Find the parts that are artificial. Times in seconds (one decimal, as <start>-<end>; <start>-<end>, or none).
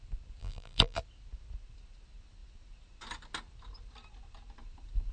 0.4-1.0